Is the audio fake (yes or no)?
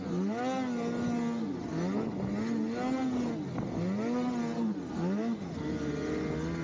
no